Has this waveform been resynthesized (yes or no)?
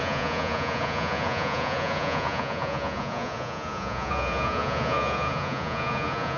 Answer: yes